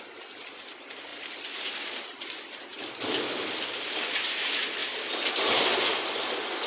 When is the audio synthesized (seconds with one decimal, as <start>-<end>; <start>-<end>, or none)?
none